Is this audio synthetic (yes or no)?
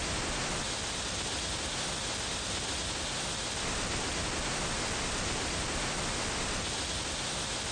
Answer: no